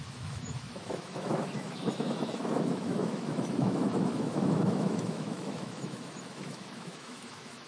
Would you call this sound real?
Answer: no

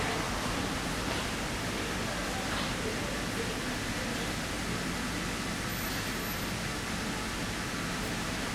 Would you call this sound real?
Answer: yes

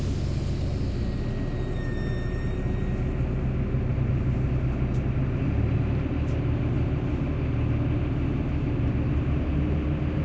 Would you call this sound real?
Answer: yes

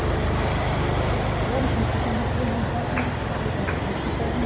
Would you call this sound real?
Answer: yes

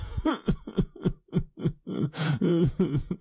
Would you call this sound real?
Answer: no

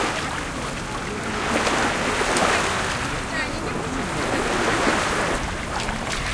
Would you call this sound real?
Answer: yes